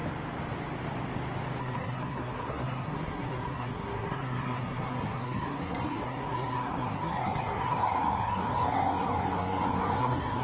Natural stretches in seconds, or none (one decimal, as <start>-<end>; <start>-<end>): 0.0-1.6